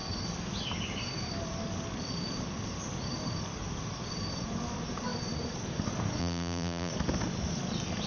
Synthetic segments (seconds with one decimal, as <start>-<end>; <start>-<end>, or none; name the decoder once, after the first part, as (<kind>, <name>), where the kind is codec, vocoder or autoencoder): 6.2-6.9 (vocoder, BigVGAN v2)